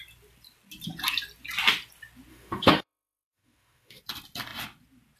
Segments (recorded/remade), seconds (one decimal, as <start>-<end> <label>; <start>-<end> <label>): 0.0-2.3 recorded; 2.3-4.0 remade; 4.0-5.2 recorded